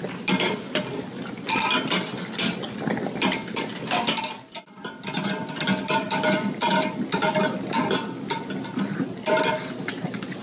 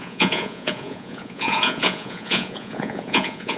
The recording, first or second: first